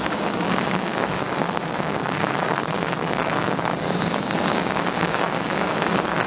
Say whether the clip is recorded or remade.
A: remade